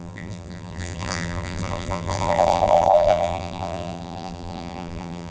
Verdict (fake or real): fake